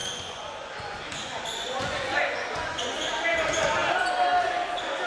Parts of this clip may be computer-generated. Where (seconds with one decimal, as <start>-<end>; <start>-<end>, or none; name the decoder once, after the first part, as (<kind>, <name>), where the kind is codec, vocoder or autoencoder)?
0.0-3.1 (vocoder, Vocos)